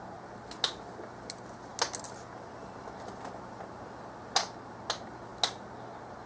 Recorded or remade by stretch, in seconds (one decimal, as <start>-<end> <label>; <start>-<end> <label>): 0.0-6.3 recorded